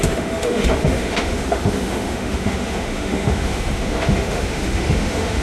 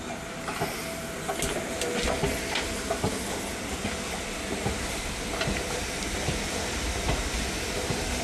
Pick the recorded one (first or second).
second